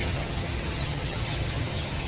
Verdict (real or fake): fake